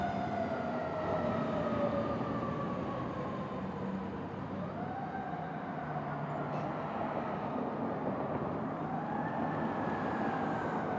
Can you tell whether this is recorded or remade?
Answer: recorded